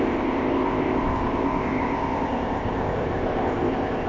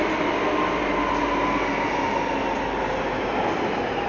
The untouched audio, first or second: second